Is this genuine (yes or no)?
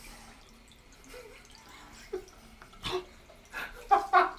yes